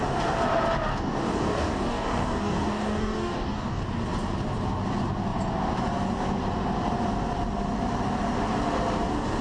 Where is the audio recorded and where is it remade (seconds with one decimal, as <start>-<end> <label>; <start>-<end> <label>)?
0.0-0.9 recorded; 0.9-3.8 remade; 3.8-9.4 recorded